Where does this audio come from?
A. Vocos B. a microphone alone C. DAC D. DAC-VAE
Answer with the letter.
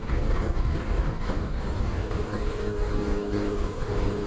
C